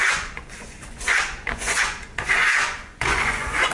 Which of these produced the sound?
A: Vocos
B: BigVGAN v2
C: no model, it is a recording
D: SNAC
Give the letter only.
A